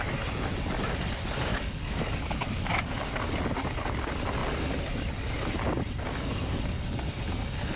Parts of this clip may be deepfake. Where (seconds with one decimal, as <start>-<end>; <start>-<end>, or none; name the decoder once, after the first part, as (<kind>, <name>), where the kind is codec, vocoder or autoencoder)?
1.5-2.5 (codec, DAC)